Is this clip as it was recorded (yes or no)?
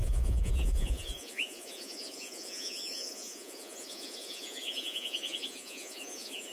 no